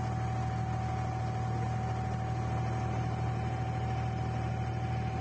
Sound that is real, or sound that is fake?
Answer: real